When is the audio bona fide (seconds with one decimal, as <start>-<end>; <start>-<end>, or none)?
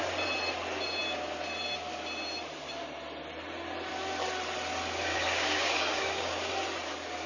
0.0-5.1; 6.5-7.3